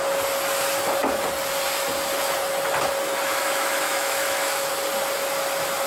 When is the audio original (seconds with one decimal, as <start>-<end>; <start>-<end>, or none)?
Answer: 0.0-3.4; 4.7-5.9